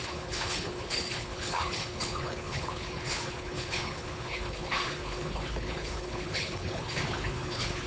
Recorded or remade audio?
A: remade